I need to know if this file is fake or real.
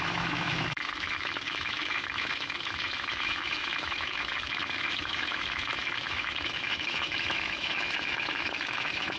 fake